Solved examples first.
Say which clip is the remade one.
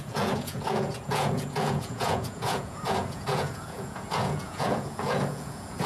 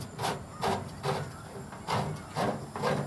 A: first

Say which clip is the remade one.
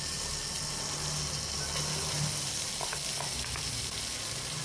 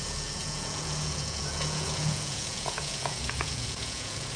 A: second